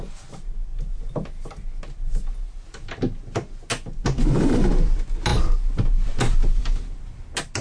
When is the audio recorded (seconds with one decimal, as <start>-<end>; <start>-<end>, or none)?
0.0-7.6